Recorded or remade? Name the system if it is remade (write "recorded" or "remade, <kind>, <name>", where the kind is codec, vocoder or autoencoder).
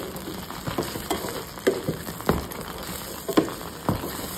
recorded